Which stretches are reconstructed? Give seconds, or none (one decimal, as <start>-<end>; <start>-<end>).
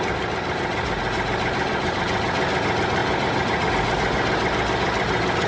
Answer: none